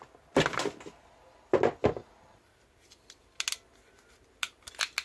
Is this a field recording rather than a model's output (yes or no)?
yes